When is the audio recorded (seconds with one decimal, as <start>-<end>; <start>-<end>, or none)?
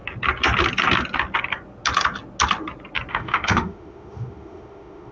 0.0-3.1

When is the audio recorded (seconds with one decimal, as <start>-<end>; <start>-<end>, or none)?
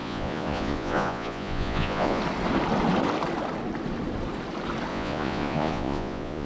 2.2-4.9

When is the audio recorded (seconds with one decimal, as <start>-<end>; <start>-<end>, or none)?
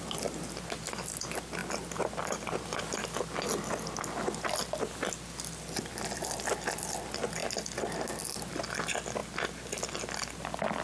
0.0-10.8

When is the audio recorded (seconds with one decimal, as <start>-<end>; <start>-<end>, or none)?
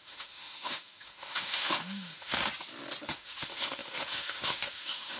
2.4-3.1